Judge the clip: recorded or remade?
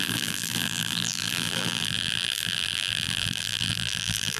remade